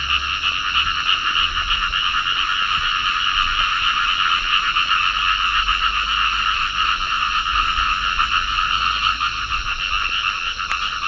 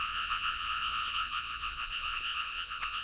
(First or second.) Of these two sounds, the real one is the first